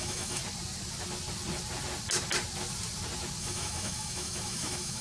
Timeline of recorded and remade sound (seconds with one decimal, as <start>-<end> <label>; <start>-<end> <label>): 0.0-0.4 remade; 0.4-3.4 recorded; 3.4-5.0 remade